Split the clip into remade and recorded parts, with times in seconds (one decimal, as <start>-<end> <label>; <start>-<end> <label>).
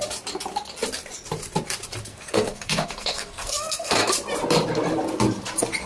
0.0-2.1 recorded; 2.1-4.1 remade; 4.1-5.9 recorded